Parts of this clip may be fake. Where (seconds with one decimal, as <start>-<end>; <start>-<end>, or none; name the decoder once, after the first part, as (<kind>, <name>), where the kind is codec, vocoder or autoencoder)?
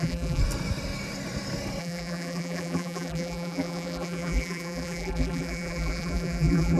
0.0-0.4 (vocoder, BigVGAN v2); 1.8-6.8